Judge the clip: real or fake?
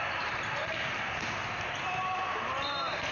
fake